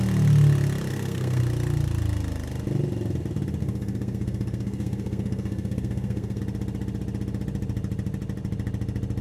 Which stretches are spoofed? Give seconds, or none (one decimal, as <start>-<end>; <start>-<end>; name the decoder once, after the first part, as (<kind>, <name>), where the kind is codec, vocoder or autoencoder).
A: 0.9-1.4 (codec, SNAC); 3.6-6.4